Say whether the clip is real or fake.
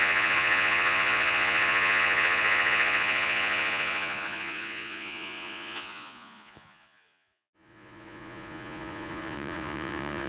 fake